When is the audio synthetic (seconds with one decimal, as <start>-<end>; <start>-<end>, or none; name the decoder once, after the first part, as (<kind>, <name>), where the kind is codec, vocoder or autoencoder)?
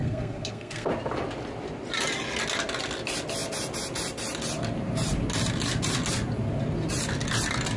0.0-0.9 (codec, SNAC)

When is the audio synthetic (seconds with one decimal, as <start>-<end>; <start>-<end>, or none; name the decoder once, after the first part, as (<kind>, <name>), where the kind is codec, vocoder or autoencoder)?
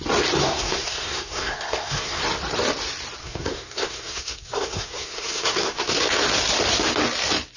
0.4-2.2 (codec, SNAC); 3.2-6.0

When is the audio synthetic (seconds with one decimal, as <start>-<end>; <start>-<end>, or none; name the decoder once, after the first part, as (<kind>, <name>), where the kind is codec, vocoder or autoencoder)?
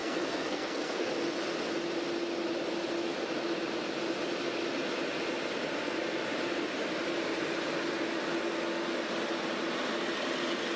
0.0-1.1 (codec, SNAC)